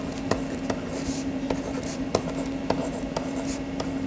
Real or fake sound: real